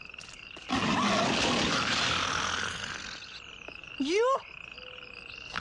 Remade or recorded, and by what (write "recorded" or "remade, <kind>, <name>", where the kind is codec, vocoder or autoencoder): recorded